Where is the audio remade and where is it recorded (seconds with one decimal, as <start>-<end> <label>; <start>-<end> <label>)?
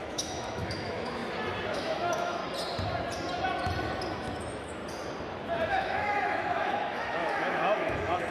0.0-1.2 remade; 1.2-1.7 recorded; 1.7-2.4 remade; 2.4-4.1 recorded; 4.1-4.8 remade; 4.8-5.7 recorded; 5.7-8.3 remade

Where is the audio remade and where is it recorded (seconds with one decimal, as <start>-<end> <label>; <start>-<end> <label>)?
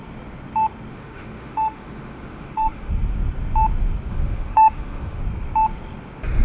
0.0-0.9 recorded; 0.9-2.9 remade; 2.9-4.1 recorded; 4.1-5.2 remade; 5.2-6.4 recorded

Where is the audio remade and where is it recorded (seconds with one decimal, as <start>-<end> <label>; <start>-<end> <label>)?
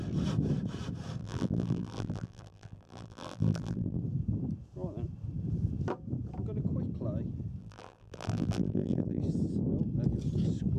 0.0-1.2 recorded; 1.2-4.0 remade; 4.0-7.6 recorded; 7.6-9.2 remade; 9.2-10.8 recorded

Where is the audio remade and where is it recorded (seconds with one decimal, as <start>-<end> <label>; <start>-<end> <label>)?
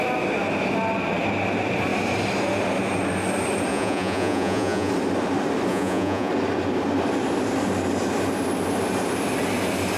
0.0-3.7 recorded; 3.7-4.9 remade; 4.9-5.7 recorded; 5.7-6.3 remade; 6.3-10.0 recorded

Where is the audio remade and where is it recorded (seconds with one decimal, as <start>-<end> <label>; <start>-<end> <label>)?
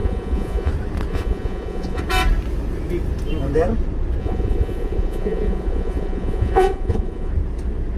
0.0-0.7 remade; 0.7-1.1 recorded; 1.1-2.0 remade; 2.0-4.2 recorded; 4.2-7.3 remade; 7.3-8.0 recorded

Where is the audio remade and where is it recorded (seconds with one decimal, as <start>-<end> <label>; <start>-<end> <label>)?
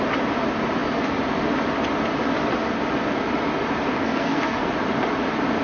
0.0-3.9 recorded; 3.9-4.7 remade; 4.7-5.6 recorded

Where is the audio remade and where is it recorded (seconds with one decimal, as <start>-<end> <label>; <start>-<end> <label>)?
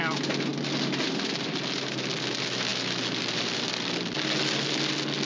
0.0-5.2 recorded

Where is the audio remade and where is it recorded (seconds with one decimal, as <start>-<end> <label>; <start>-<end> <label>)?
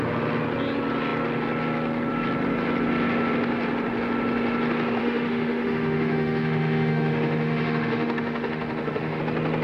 0.0-5.0 recorded; 5.0-9.2 remade; 9.2-9.6 recorded